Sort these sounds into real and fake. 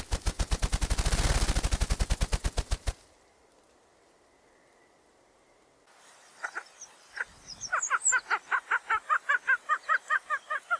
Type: real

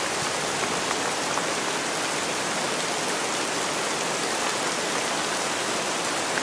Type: real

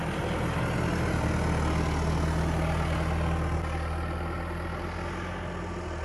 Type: real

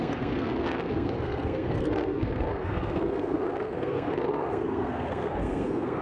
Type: fake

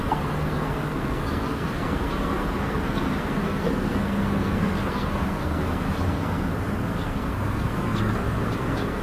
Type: fake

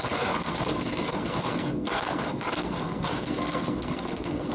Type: fake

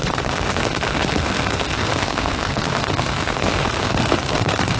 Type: fake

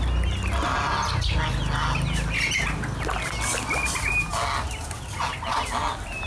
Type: real